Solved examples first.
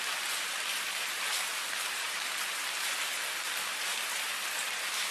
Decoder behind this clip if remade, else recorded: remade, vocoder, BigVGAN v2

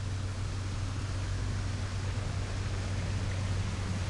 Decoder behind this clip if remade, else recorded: recorded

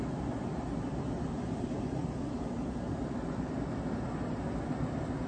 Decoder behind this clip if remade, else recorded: recorded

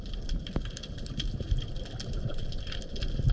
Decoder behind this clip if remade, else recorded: recorded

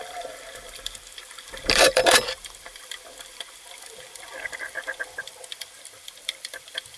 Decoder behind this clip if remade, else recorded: remade, vocoder, BigVGAN v2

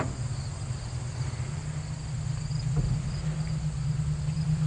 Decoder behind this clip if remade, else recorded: recorded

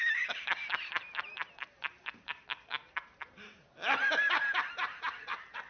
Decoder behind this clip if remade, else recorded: remade, vocoder, BigVGAN v2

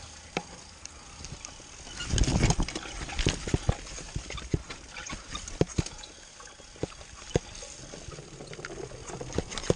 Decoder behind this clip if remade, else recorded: recorded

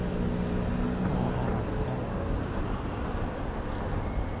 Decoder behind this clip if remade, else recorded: recorded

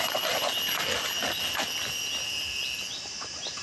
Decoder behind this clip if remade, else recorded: recorded